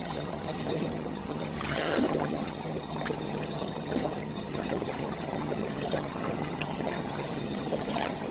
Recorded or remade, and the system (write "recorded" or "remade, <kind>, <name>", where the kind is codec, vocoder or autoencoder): remade, vocoder, HiFi-GAN